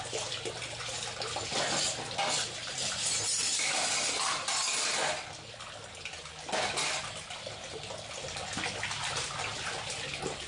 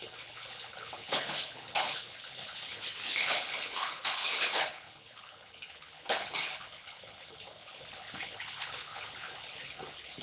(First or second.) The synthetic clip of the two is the second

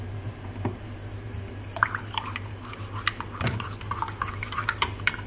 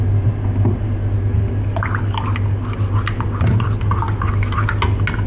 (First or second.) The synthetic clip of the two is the first